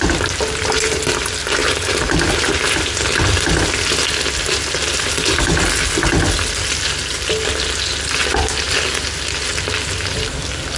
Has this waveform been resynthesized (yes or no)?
no